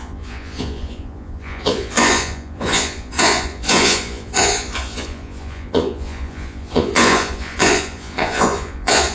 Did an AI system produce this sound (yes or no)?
yes